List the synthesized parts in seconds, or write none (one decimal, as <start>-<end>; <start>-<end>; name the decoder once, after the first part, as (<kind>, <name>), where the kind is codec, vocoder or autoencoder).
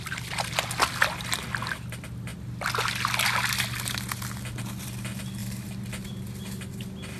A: none